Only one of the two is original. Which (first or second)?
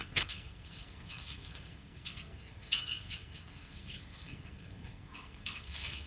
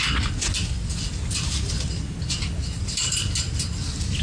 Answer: second